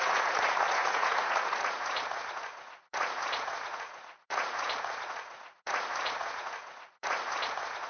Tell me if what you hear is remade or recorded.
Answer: remade